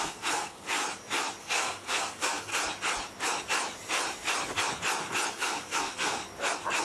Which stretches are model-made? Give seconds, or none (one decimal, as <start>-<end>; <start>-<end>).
0.0-0.8; 1.4-2.5; 5.3-6.2